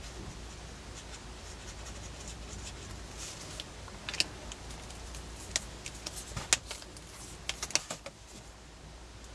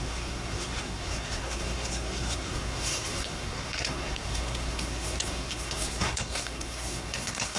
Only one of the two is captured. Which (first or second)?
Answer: first